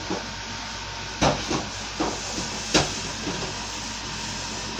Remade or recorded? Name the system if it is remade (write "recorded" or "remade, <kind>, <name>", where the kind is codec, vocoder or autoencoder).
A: recorded